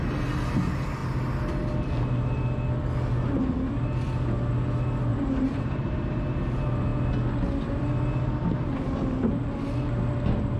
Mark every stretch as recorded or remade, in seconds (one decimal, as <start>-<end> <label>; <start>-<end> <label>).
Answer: 0.0-5.1 recorded; 5.1-6.4 remade; 6.4-10.6 recorded

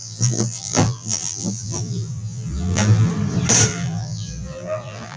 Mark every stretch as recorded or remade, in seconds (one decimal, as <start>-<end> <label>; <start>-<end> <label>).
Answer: 0.0-3.1 remade; 3.1-3.7 recorded; 3.7-5.2 remade

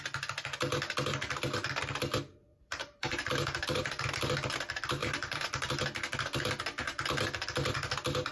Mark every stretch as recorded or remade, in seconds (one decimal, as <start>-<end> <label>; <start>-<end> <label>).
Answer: 0.0-2.5 recorded; 2.5-3.9 remade; 3.9-5.0 recorded; 5.0-5.7 remade; 5.7-8.3 recorded

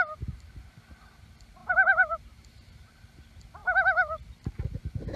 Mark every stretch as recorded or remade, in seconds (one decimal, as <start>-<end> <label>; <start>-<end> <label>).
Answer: 0.0-1.6 recorded; 1.6-2.9 remade; 2.9-5.2 recorded

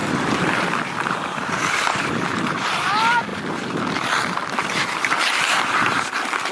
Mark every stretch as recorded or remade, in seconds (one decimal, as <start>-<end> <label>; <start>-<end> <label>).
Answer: 0.0-3.3 remade; 3.3-4.9 recorded; 4.9-6.5 remade

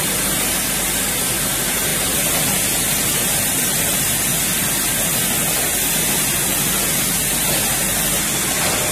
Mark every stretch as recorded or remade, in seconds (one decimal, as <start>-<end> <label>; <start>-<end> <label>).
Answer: 0.0-8.9 recorded